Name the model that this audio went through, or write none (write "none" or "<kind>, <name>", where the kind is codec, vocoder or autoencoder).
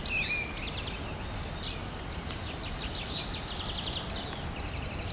none